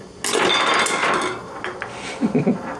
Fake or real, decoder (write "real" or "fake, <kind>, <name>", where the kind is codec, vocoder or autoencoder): real